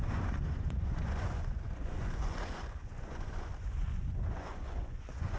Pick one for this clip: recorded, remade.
remade